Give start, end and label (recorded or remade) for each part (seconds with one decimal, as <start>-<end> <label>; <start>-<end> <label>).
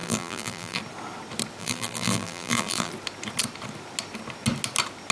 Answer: 0.0-0.8 remade; 0.8-1.6 recorded; 1.6-2.9 remade; 2.9-5.1 recorded